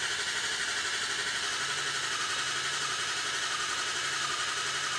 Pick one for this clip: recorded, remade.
recorded